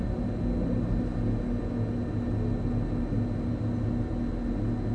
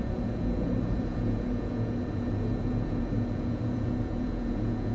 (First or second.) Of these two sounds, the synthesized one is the second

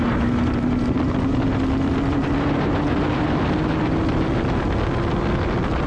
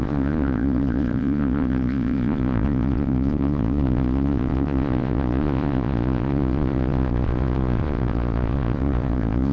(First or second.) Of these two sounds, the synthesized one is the second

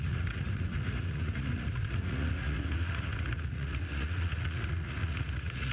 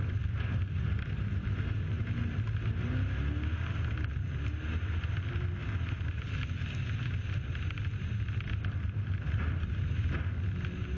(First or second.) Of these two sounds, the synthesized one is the first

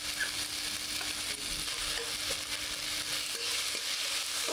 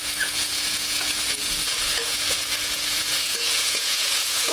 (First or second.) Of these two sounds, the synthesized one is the second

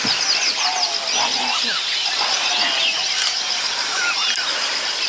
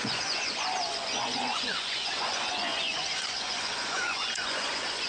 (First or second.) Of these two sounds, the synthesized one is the second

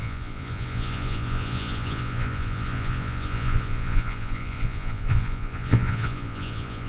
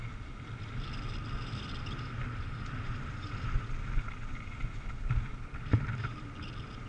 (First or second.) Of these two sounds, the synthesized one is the first